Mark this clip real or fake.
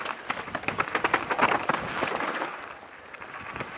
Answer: real